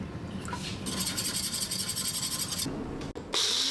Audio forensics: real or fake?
real